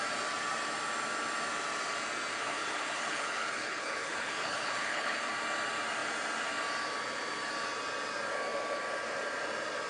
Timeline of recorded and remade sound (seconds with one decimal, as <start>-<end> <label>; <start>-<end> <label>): 0.0-2.3 recorded; 2.3-5.3 remade; 5.3-9.9 recorded